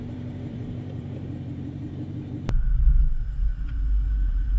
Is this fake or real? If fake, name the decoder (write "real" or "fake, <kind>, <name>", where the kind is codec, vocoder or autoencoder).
fake, vocoder, BigVGAN v2